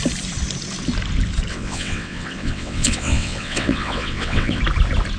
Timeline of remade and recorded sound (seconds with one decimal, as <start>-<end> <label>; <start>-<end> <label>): 0.0-1.5 recorded; 1.5-4.6 remade; 4.6-5.2 recorded

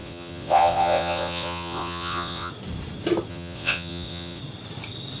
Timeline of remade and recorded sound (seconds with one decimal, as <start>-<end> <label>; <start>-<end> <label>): 0.0-2.5 remade; 2.5-3.3 recorded; 3.3-4.4 remade; 4.4-5.2 recorded

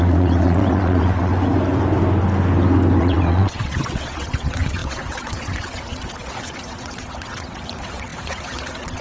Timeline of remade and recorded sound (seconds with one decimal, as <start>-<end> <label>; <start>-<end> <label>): 0.0-1.3 remade; 1.3-3.0 recorded; 3.0-9.0 remade

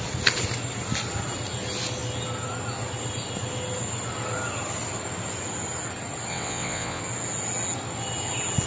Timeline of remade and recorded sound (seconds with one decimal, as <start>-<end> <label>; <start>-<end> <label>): 0.0-6.3 recorded; 6.3-7.0 remade; 7.0-8.7 recorded

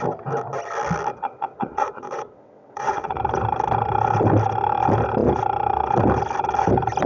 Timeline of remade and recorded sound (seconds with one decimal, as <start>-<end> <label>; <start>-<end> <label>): 0.0-1.1 recorded; 1.1-3.2 remade; 3.2-7.1 recorded

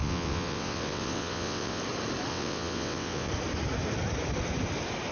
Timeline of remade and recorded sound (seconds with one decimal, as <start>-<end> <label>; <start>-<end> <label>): 0.0-1.8 remade; 1.8-2.3 recorded; 2.3-3.3 remade; 3.3-5.1 recorded

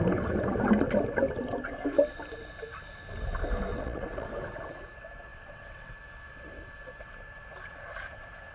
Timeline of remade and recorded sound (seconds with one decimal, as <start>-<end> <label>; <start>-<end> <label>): 0.0-3.7 recorded; 3.7-4.3 remade; 4.3-5.3 recorded; 5.3-5.9 remade; 5.9-8.5 recorded

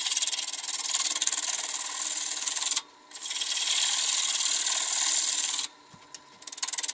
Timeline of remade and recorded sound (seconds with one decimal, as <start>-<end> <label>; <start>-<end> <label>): 0.0-6.9 recorded